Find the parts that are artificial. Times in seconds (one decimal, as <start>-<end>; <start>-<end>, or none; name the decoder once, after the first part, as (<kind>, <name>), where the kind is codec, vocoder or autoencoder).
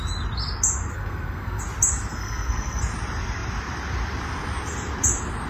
0.9-1.6 (codec, SNAC); 2.1-2.8